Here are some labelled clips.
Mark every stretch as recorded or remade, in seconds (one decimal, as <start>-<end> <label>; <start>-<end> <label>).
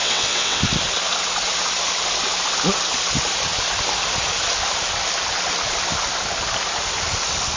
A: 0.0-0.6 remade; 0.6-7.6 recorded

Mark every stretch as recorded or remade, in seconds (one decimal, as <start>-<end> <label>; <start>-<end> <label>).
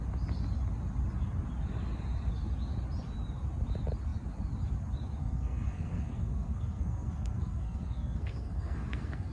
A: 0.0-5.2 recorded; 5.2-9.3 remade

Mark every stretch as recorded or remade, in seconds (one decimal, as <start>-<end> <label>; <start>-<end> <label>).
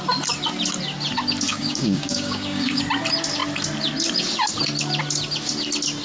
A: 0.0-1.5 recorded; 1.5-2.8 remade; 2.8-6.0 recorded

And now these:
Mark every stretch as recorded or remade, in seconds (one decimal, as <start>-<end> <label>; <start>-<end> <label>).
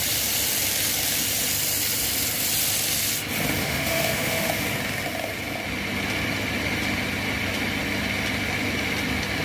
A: 0.0-3.6 recorded; 3.6-4.5 remade; 4.5-9.4 recorded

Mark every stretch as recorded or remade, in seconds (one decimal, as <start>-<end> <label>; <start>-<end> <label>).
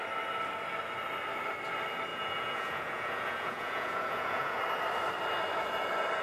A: 0.0-2.1 recorded; 2.1-4.6 remade; 4.6-6.2 recorded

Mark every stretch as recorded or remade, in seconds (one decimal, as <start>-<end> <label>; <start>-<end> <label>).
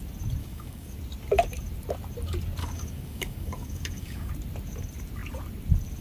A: 0.0-0.4 recorded; 0.4-1.0 remade; 1.0-2.6 recorded; 2.6-4.3 remade; 4.3-6.0 recorded